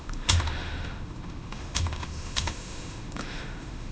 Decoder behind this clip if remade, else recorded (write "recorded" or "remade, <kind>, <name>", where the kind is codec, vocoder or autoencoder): remade, autoencoder, DAC-VAE